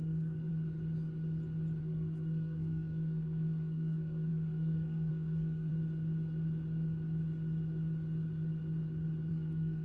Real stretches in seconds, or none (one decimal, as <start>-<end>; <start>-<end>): 0.5-1.8; 5.7-9.3